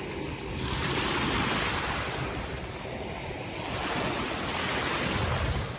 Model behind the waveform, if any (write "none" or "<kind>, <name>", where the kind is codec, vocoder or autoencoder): none